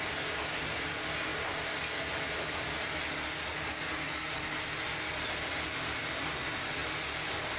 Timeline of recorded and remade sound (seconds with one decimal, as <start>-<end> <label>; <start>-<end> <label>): 0.0-7.6 recorded